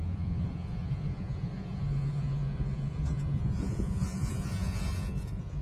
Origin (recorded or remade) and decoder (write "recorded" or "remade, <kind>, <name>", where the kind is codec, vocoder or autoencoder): remade, vocoder, Vocos